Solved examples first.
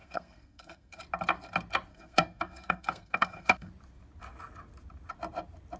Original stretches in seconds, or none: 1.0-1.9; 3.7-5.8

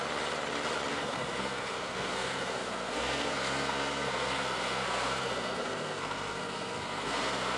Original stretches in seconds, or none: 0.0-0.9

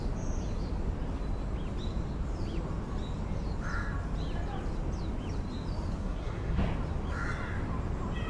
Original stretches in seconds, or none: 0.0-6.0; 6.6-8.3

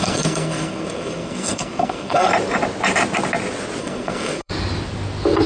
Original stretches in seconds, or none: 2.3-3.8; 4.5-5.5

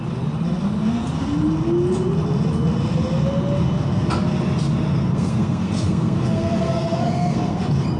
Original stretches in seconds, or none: 0.0-4.9; 7.6-8.0

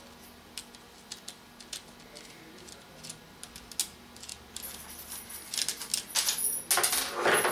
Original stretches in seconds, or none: 0.0-7.5